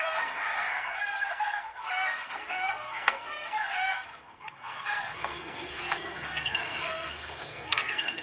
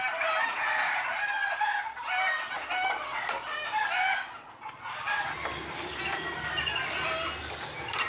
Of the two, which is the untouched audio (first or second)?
second